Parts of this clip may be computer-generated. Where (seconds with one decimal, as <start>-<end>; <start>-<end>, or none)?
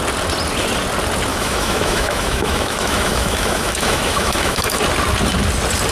1.3-4.8